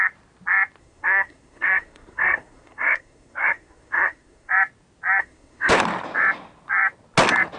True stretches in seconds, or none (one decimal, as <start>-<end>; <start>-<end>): 0.0-0.8; 4.5-5.2; 5.7-7.6